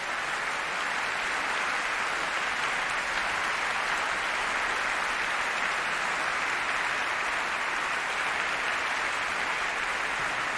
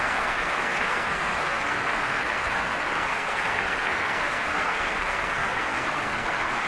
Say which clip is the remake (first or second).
second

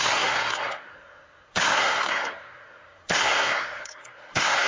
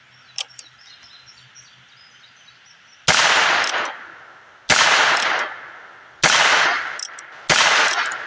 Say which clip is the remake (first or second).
first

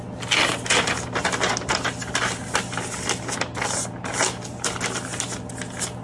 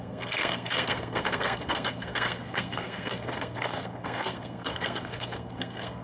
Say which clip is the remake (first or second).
second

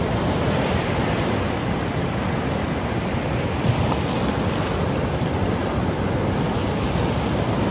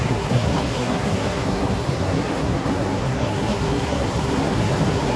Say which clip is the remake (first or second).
second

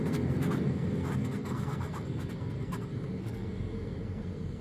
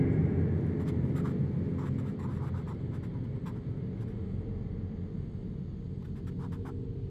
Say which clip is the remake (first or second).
first